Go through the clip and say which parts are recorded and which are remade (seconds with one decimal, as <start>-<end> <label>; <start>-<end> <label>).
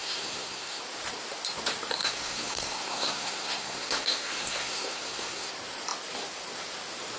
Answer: 0.0-0.8 remade; 0.8-2.0 recorded; 2.0-5.5 remade; 5.5-7.2 recorded